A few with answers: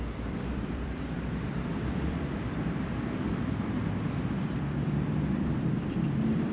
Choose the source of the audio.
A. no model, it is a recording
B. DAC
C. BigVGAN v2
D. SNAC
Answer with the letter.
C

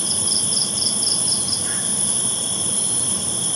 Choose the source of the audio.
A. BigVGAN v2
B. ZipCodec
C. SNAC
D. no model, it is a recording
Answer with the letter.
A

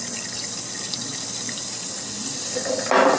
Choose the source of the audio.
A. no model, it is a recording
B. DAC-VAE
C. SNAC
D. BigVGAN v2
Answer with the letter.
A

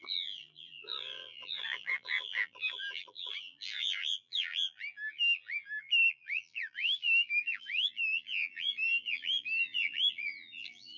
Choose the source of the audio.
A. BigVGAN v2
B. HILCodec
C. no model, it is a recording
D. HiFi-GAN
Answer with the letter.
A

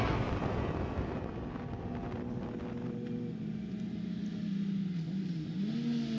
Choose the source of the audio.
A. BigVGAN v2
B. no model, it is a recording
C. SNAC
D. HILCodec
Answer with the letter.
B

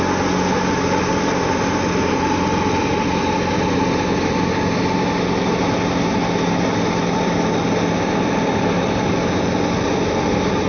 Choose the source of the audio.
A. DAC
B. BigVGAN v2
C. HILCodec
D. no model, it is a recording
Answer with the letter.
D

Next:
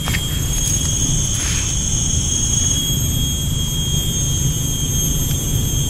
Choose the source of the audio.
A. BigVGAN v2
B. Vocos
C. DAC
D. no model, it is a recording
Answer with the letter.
D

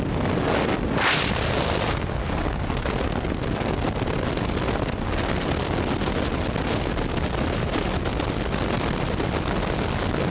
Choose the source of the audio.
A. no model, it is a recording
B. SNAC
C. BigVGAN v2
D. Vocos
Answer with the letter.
A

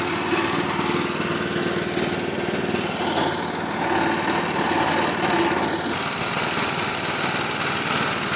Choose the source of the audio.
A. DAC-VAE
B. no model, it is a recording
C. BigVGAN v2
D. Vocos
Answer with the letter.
B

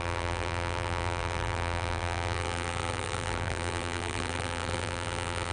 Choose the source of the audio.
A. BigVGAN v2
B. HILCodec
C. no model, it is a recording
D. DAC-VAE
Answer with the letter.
A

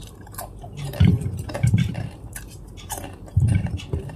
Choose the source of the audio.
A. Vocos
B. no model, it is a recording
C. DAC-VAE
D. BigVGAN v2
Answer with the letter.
D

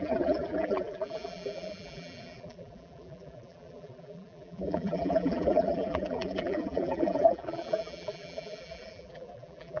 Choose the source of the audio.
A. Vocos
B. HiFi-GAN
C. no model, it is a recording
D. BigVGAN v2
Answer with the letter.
D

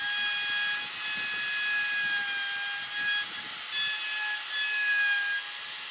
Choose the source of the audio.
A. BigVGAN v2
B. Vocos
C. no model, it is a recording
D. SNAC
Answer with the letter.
C